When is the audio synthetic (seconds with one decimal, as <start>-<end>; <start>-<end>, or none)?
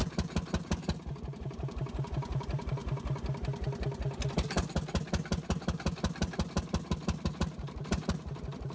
1.1-2.8; 7.3-8.7